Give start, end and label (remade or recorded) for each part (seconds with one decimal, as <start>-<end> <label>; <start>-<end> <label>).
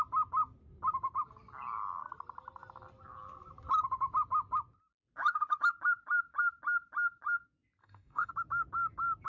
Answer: 0.0-7.8 recorded; 7.8-8.3 remade; 8.3-9.3 recorded